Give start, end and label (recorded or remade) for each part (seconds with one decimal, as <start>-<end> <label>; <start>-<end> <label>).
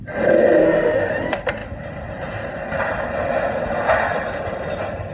0.0-0.6 recorded; 0.6-1.1 remade; 1.1-5.1 recorded